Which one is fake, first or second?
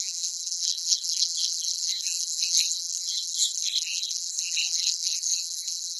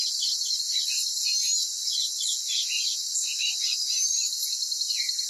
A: first